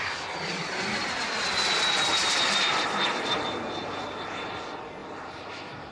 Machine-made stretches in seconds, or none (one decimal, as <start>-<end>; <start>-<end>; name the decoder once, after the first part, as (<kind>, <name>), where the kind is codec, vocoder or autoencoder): 2.2-3.1 (vocoder, BigVGAN v2); 5.0-5.5